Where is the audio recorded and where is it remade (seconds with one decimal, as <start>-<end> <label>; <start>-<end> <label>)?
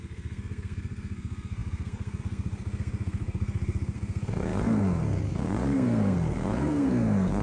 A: 0.0-7.4 remade